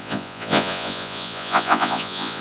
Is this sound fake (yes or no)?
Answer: yes